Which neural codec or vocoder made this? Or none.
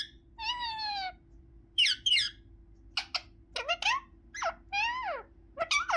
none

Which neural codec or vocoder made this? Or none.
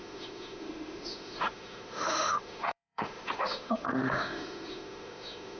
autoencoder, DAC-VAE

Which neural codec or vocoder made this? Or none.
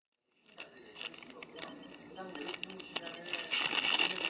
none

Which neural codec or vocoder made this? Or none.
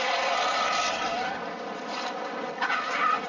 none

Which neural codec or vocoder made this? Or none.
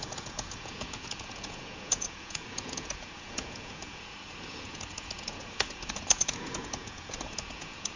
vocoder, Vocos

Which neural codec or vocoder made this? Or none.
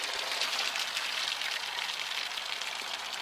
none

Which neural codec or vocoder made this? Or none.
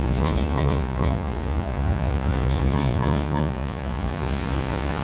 vocoder, Vocos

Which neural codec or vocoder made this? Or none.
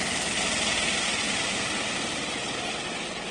none